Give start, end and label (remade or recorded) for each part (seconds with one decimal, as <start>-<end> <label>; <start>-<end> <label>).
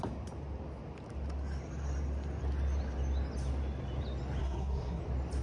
0.0-4.4 recorded; 4.4-5.0 remade; 5.0-5.4 recorded